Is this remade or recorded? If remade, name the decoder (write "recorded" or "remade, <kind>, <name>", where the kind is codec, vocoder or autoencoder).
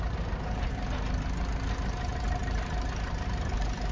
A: recorded